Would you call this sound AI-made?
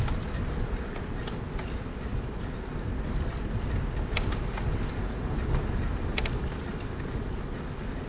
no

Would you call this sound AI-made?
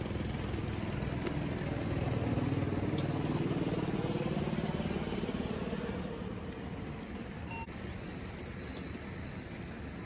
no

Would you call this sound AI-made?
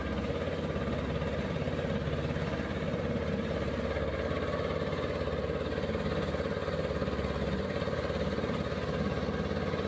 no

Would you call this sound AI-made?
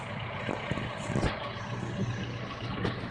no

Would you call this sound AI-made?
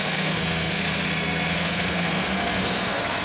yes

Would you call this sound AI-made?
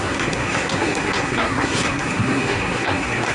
yes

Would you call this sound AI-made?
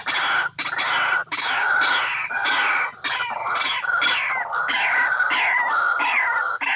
no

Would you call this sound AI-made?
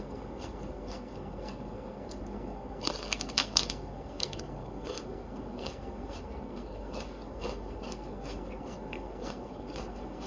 yes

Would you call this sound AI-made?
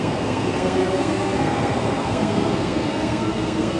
yes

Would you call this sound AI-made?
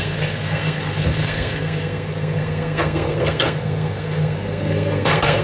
yes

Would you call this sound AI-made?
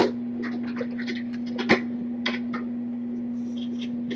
no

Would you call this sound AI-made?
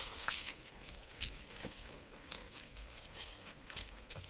yes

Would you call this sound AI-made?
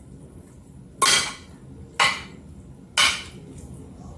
no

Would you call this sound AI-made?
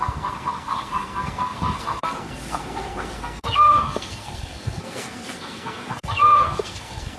yes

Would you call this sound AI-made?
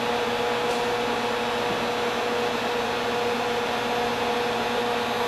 no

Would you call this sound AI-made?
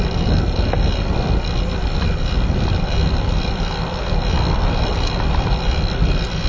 no